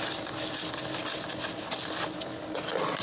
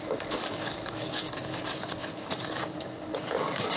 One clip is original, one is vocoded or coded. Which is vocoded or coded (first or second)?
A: second